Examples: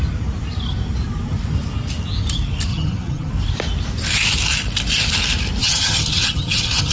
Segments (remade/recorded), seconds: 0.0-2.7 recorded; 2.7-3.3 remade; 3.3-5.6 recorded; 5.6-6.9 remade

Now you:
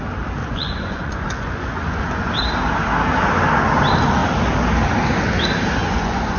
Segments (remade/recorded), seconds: 0.0-0.4 recorded; 0.4-2.3 remade; 2.3-5.8 recorded; 5.8-6.4 remade

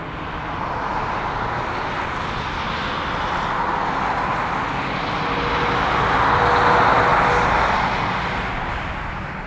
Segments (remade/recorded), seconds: 0.0-9.5 recorded